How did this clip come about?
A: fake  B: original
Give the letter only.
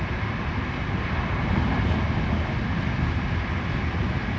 B